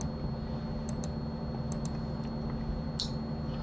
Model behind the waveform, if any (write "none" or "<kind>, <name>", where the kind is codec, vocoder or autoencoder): none